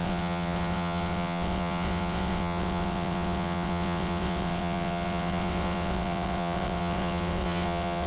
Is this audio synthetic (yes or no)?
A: yes